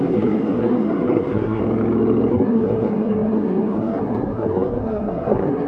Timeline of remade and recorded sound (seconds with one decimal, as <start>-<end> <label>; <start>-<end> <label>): 0.0-1.6 remade; 1.6-2.3 recorded; 2.3-5.7 remade